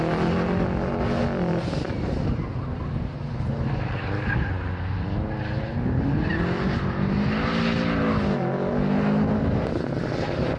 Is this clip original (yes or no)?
yes